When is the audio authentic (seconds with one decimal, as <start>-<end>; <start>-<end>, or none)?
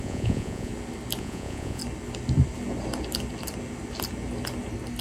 0.7-1.2; 1.8-5.0